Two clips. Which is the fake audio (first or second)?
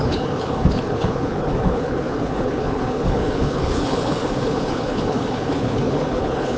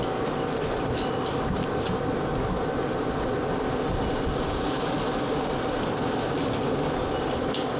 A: first